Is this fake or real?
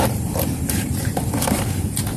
fake